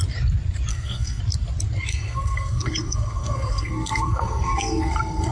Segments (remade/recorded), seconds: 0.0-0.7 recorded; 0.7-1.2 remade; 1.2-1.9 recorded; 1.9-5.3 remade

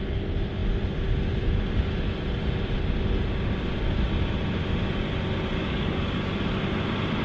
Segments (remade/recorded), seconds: 0.0-5.6 recorded; 5.6-6.4 remade; 6.4-7.2 recorded

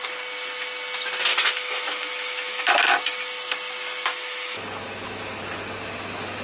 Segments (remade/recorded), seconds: 0.0-1.3 recorded; 1.3-2.9 remade; 2.9-4.1 recorded; 4.1-5.4 remade; 5.4-6.4 recorded

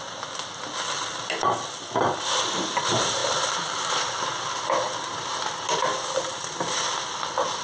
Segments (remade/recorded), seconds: 0.0-3.2 recorded; 3.2-7.6 remade

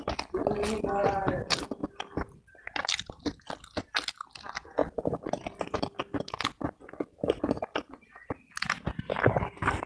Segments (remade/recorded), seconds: 0.0-9.9 recorded